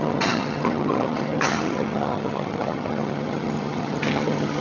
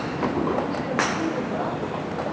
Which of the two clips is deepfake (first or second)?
first